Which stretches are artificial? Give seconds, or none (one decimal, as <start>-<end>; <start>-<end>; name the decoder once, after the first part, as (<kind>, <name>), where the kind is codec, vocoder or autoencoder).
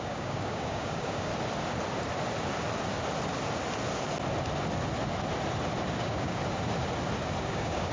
0.0-1.3 (codec, DAC); 6.0-6.4; 7.4-7.9